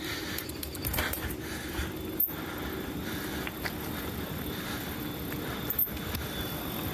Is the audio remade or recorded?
recorded